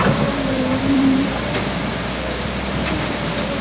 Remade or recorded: remade